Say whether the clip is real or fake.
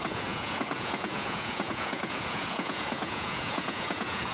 fake